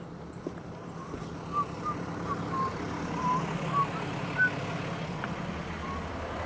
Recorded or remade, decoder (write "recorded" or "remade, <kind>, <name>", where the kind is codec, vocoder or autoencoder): recorded